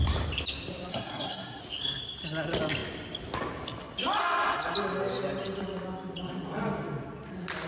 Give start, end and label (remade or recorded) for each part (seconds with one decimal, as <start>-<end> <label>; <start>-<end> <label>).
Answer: 0.0-0.9 recorded; 0.9-1.6 remade; 1.6-7.7 recorded